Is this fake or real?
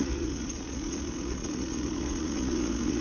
fake